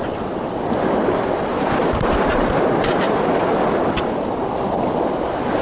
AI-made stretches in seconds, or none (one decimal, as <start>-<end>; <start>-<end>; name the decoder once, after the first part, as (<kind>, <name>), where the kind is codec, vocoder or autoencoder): 1.5-3.6 (vocoder, BigVGAN v2)